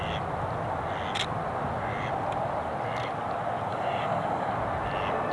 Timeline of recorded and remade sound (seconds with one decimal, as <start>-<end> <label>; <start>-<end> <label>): 0.0-3.7 recorded; 3.7-4.5 remade; 4.5-5.3 recorded